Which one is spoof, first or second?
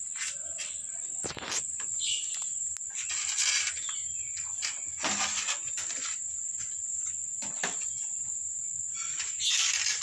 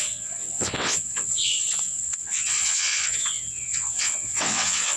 second